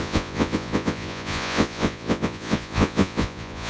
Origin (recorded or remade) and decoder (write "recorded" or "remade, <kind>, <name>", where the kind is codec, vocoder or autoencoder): remade, vocoder, Vocos